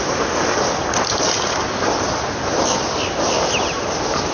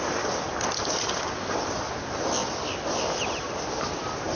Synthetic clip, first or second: first